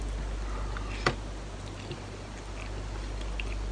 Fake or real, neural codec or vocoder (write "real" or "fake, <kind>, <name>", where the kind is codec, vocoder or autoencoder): real